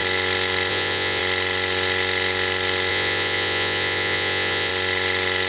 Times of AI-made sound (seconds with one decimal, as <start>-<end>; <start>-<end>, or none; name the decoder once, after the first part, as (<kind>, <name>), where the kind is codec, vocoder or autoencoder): 0.7-1.2 (vocoder, Vocos); 2.9-4.7